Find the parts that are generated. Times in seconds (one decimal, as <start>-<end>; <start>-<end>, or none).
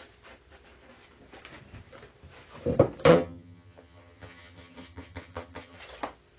3.1-5.8